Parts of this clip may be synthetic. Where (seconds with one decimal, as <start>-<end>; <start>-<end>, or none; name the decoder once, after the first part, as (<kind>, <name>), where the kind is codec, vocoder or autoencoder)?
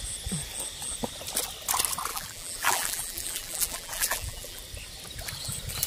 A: 2.1-4.6 (vocoder, BigVGAN v2)